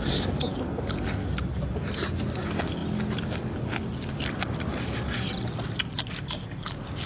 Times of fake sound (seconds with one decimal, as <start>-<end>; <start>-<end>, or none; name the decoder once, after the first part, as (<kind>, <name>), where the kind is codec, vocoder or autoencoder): none